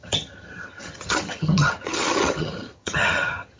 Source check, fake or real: fake